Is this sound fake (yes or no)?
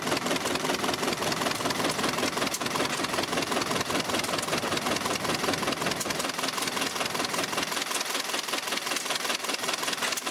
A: no